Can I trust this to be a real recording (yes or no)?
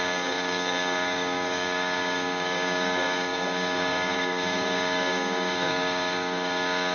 no